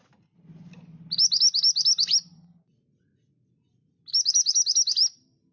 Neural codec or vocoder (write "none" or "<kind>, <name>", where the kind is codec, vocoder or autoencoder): none